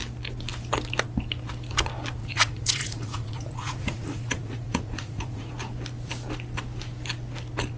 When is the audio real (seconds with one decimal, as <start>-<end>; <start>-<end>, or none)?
0.0-2.2; 5.5-7.8